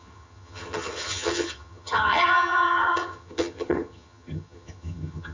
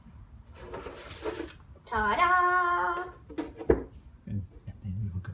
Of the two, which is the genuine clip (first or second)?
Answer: second